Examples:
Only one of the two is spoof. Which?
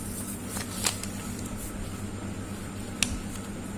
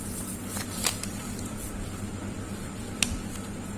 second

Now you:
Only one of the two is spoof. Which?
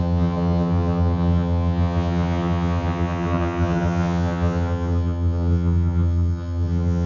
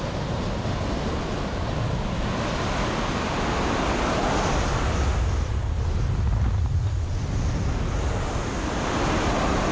first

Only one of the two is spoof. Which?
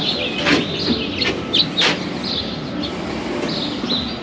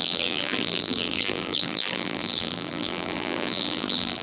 second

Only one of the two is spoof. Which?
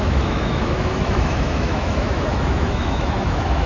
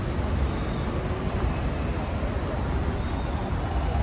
first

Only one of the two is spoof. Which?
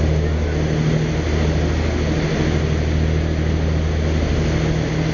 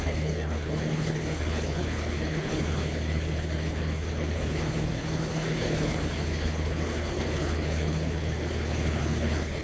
second